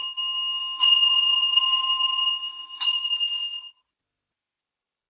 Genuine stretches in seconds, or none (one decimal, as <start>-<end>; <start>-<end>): 3.1-5.1